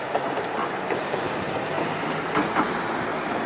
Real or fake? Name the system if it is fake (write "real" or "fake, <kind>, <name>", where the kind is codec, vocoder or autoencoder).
fake, vocoder, BigVGAN v2